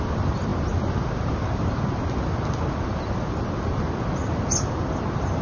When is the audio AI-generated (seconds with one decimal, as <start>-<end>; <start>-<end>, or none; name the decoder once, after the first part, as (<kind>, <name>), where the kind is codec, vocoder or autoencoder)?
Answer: none